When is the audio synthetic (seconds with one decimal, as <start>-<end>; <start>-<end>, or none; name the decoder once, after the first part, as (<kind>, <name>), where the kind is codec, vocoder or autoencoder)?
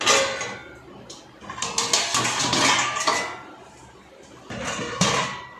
none